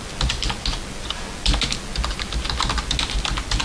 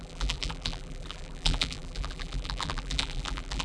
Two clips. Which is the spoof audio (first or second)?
second